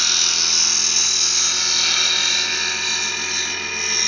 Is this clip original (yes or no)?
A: yes